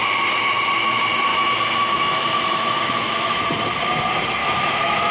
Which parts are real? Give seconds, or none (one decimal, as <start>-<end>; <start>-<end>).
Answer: 0.0-1.3; 3.4-4.4